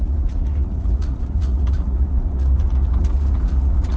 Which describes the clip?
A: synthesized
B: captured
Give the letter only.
A